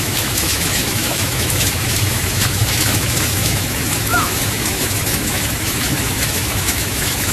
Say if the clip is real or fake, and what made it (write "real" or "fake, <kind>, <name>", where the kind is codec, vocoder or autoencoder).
fake, autoencoder, DAC-VAE